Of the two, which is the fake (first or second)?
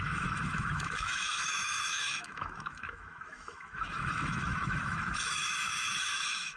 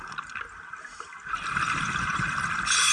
first